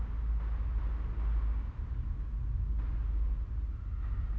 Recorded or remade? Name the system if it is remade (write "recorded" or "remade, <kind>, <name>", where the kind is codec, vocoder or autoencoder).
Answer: recorded